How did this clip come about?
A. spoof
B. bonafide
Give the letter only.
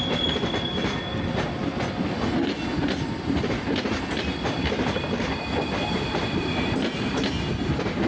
B